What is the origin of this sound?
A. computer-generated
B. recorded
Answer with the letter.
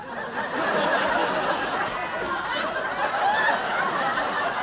B